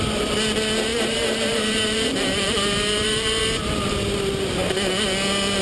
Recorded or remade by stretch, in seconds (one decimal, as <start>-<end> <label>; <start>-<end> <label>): 0.0-0.9 recorded; 0.9-3.4 remade; 3.4-5.6 recorded